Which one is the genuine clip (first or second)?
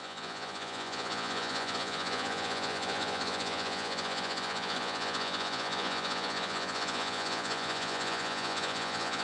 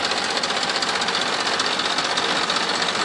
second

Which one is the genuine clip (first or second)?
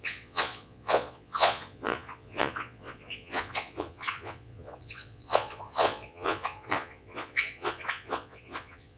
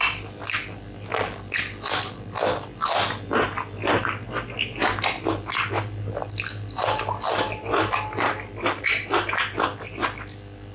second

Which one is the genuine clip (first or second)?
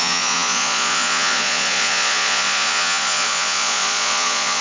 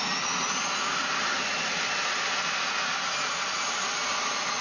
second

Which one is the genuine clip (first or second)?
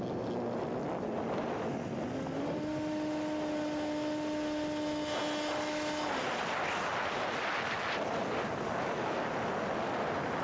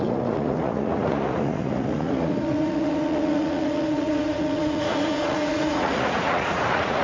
first